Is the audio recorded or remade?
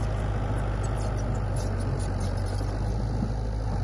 recorded